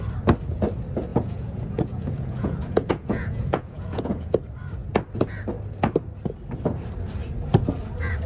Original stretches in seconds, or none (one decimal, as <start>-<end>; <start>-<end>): 0.0-1.1; 4.3-8.3